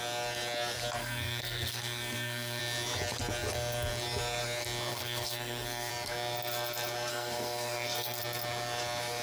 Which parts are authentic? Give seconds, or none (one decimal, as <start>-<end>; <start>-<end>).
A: 0.0-1.0; 2.6-4.9; 5.9-7.1; 8.2-9.2